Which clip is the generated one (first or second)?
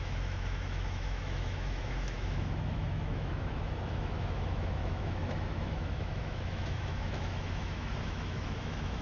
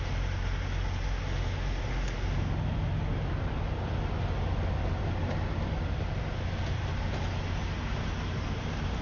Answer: first